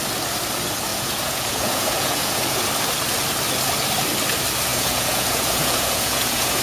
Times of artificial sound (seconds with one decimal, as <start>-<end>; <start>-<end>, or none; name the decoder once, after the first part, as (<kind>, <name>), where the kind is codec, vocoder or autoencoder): 0.9-2.6 (vocoder, Vocos); 4.7-6.6